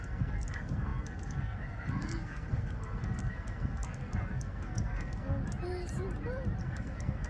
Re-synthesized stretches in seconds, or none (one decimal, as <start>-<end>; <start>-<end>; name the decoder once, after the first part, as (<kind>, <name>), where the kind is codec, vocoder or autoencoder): 0.0-5.4 (codec, SNAC); 6.6-7.3